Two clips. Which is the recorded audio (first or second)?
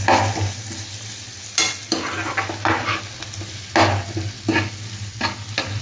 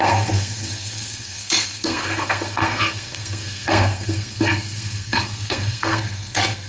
first